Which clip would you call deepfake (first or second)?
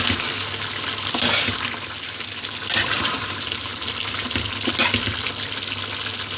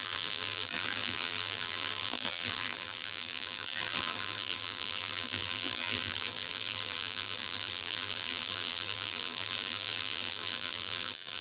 second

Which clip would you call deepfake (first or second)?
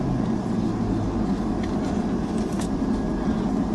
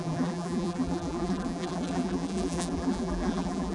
second